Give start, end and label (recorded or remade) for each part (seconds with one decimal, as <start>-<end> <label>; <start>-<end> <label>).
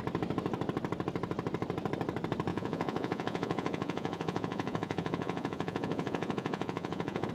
0.0-2.5 recorded; 2.5-7.3 remade